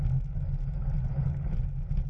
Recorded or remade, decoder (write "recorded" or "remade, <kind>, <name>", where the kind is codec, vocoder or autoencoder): recorded